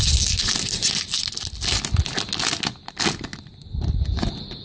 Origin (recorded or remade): recorded